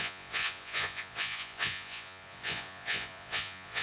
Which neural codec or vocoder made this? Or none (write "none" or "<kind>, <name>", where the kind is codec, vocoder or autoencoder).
vocoder, Vocos